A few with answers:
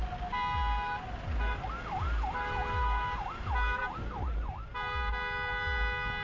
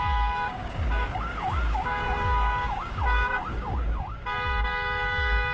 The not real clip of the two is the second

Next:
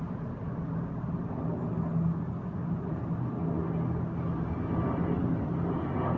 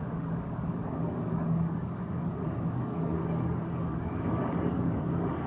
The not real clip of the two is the second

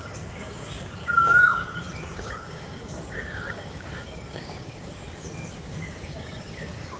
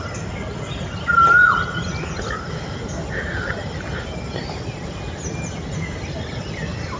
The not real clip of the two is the first